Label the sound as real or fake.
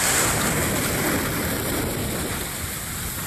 fake